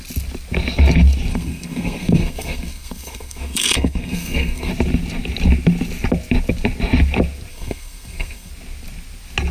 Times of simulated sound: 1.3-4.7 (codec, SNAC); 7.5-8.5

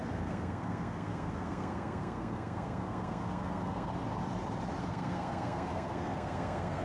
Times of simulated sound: 0.0-3.9 (codec, SNAC); 4.8-6.8

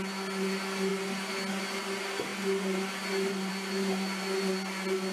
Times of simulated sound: none

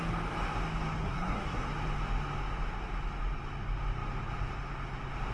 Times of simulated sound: 1.0-1.7 (codec, SNAC)

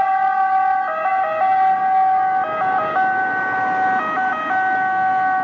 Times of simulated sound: none

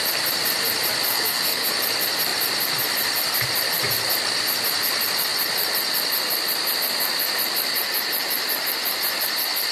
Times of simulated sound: 1.1-1.7 (codec, SNAC)